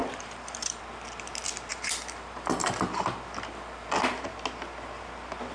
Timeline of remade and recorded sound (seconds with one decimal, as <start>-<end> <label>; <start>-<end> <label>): 0.0-0.8 remade; 0.8-1.7 recorded; 1.7-4.2 remade; 4.2-5.5 recorded